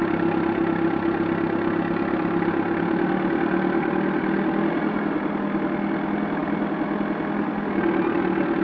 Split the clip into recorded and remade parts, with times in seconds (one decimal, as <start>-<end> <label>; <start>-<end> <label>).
0.0-8.6 recorded